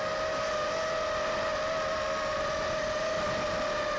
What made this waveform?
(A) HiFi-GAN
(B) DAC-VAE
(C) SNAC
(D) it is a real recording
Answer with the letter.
D